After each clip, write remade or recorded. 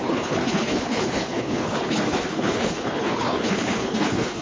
remade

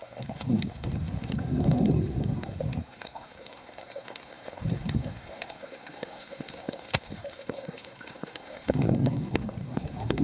remade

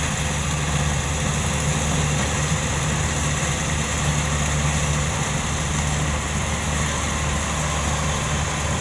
recorded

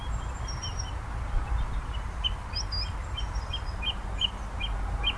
recorded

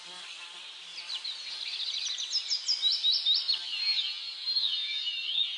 recorded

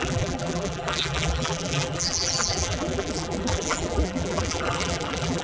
remade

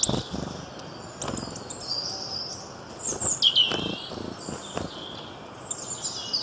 recorded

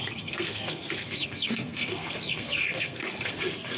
remade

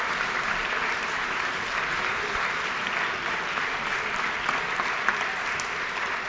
remade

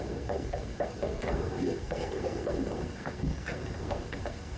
remade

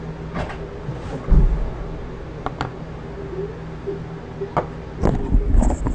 recorded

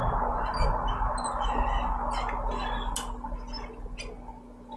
recorded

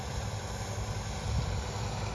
recorded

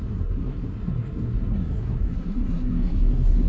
remade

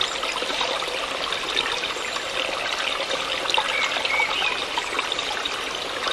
recorded